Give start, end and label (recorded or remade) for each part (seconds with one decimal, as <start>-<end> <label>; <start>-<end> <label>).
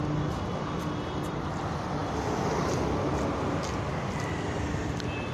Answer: 0.0-5.3 recorded